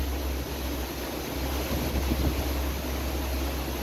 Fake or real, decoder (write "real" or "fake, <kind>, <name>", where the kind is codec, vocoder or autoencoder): real